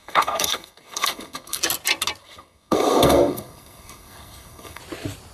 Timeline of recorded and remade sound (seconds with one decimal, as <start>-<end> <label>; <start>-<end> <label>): 0.0-1.6 remade; 1.6-2.2 recorded; 2.2-4.8 remade; 4.8-5.3 recorded